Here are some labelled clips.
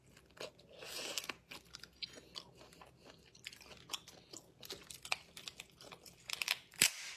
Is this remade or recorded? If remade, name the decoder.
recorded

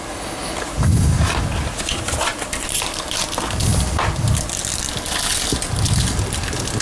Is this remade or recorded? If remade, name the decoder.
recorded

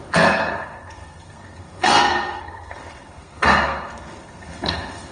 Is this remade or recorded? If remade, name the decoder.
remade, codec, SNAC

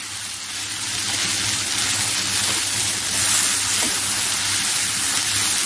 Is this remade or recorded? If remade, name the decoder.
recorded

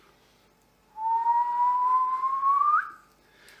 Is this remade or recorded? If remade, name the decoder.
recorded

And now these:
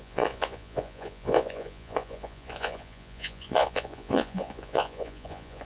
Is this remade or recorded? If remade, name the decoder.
remade, vocoder, Vocos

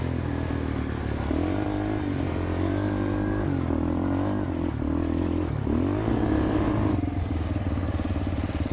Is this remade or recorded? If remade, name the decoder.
recorded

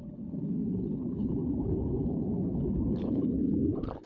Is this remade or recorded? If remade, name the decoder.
remade, codec, HILCodec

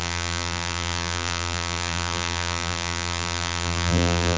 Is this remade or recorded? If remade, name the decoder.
remade, vocoder, BigVGAN v2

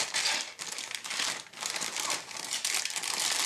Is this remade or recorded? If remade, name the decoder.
recorded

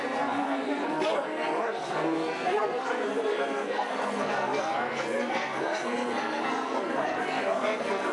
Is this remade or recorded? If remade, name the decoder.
remade, codec, SNAC